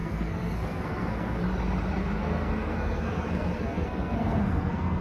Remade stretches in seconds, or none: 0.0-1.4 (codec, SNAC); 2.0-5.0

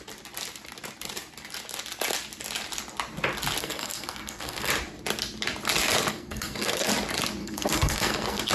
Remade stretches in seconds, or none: 3.6-4.7 (codec, SNAC); 6.1-6.9; 7.4-8.5

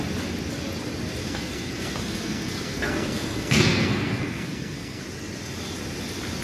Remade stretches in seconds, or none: 1.2-5.0 (codec, SNAC)

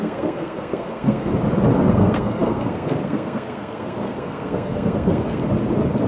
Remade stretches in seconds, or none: 0.0-1.3 (codec, SNAC); 1.9-5.4